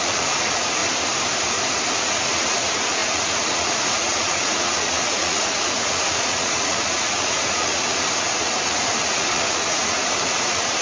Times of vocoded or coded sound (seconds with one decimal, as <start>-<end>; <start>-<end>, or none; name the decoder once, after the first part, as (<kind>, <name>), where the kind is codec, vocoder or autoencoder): 0.0-0.8 (vocoder, Vocos); 1.9-10.8